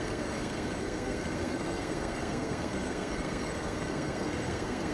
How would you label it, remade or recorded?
remade